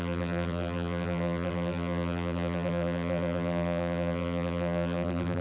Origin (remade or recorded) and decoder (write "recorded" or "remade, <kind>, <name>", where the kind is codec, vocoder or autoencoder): remade, vocoder, BigVGAN v2